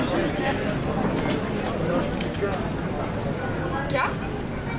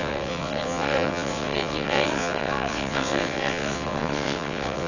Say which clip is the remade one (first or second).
second